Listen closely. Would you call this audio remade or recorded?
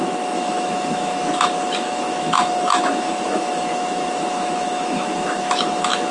remade